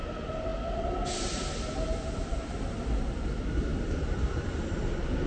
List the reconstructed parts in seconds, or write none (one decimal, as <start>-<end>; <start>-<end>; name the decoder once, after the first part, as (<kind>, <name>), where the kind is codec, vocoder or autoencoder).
none